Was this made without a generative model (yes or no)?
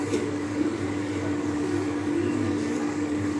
no